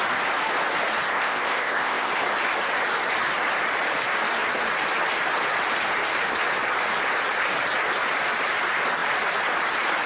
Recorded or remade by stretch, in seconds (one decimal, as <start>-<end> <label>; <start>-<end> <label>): 0.0-1.1 recorded; 1.1-2.1 remade; 2.1-10.1 recorded